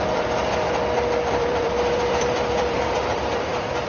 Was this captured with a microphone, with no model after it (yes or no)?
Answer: no